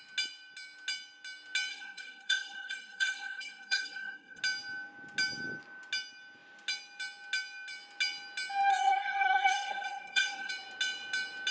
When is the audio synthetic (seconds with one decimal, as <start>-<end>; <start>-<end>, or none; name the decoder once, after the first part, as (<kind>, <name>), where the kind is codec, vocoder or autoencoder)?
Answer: 1.7-4.4 (codec, SNAC); 8.7-10.5